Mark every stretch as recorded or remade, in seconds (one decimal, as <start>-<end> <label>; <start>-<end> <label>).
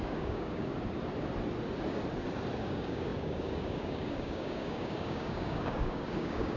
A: 0.0-0.7 remade; 0.7-2.6 recorded; 2.6-6.6 remade